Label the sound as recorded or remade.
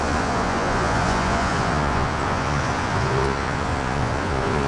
remade